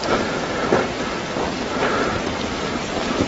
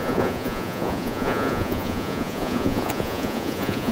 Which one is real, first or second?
first